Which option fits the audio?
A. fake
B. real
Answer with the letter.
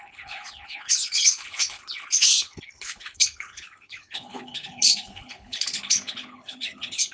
A